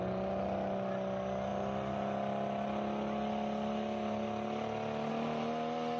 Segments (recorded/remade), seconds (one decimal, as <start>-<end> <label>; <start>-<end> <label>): 0.0-6.0 recorded